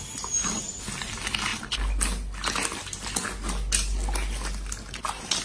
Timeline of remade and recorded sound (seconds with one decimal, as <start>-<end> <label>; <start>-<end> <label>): 0.0-5.4 recorded